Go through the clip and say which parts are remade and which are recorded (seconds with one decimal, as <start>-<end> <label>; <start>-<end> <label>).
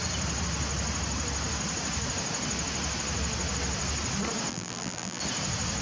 0.0-4.5 recorded; 4.5-5.2 remade; 5.2-5.8 recorded